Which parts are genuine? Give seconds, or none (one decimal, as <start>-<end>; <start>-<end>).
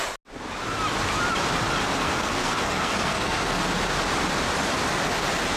0.0-2.0; 3.6-5.6